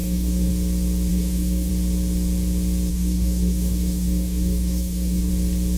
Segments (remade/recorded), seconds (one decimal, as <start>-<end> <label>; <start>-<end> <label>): 0.0-0.5 remade; 0.5-1.1 recorded; 1.1-1.7 remade; 1.7-2.9 recorded; 2.9-5.3 remade; 5.3-5.8 recorded

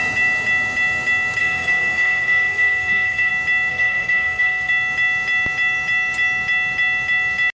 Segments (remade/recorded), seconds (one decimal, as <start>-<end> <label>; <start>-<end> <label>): 0.0-1.4 recorded; 1.4-3.3 remade; 3.3-3.7 recorded; 3.7-4.7 remade; 4.7-7.6 recorded

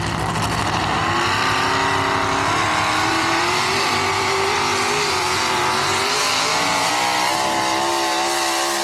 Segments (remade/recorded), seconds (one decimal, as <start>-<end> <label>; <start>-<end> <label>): 0.0-3.1 recorded; 3.1-6.9 remade; 6.9-8.8 recorded

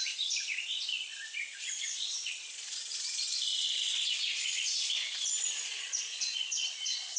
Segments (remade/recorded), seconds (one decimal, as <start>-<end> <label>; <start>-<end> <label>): 0.0-7.2 remade